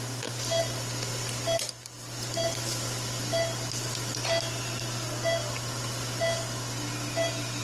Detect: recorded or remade recorded